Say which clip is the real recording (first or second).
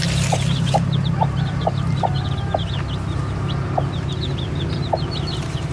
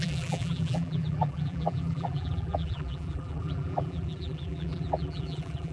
first